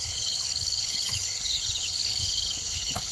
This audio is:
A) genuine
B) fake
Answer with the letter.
B